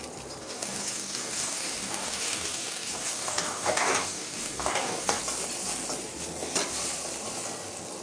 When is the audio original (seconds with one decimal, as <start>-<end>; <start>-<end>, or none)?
0.0-0.4; 5.2-8.0